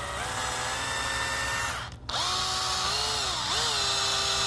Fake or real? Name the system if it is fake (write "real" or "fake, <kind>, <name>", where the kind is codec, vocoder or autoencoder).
real